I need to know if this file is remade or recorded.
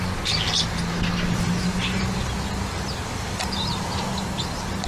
recorded